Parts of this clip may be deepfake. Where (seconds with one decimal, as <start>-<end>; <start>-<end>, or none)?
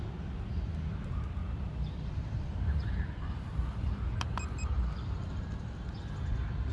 1.4-5.4